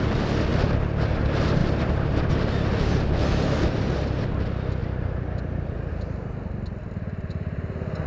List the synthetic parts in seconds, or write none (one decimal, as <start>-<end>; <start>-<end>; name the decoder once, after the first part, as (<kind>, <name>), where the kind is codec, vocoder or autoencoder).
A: 1.6-2.3 (vocoder, BigVGAN v2); 4.8-5.9